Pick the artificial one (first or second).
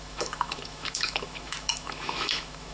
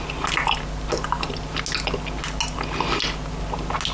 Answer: first